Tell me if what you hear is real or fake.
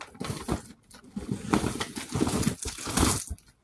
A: real